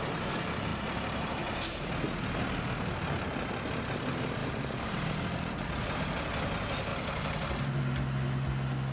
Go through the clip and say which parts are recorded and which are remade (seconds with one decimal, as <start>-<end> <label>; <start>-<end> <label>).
0.0-0.7 recorded; 0.7-1.9 remade; 1.9-4.4 recorded; 4.4-6.0 remade; 6.0-6.9 recorded; 6.9-7.8 remade; 7.8-8.9 recorded